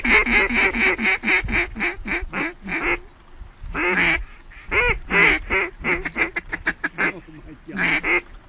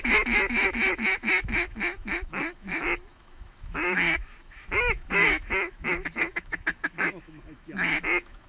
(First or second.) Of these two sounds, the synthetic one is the second